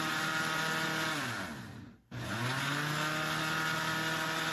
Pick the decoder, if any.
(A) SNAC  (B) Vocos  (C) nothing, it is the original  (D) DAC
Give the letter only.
C